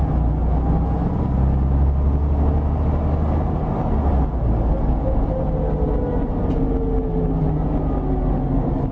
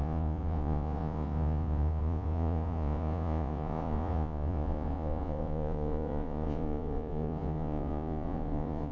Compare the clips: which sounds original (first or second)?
first